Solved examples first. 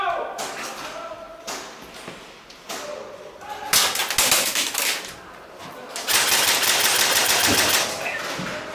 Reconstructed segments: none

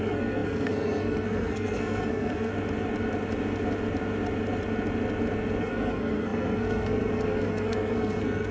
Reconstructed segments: 0.0-2.5 (codec, SNAC); 5.6-8.5